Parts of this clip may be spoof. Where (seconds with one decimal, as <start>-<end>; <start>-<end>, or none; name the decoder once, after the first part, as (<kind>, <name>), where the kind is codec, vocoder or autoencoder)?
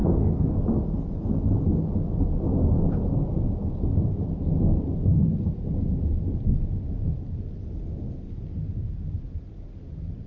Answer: 0.0-0.5 (codec, SNAC)